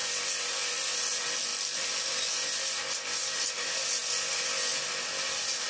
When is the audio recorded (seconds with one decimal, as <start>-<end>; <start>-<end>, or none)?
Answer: 0.0-5.7